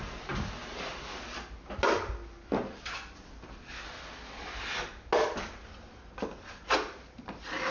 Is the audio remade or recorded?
recorded